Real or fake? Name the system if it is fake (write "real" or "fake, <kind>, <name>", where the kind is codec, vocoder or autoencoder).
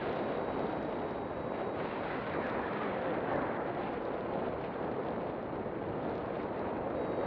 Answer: real